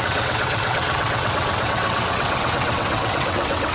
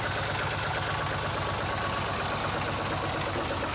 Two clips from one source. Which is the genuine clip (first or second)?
second